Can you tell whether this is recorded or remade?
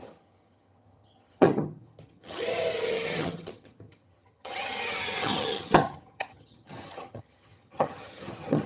remade